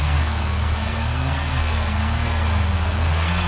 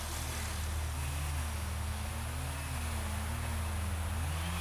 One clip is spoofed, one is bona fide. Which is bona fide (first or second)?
second